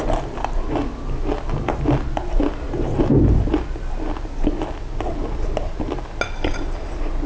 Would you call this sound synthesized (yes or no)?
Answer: no